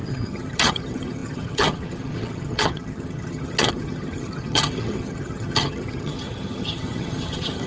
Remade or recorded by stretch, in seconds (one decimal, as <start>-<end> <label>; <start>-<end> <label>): 0.0-7.7 remade